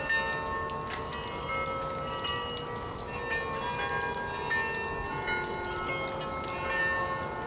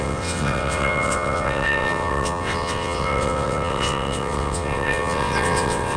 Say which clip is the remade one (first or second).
second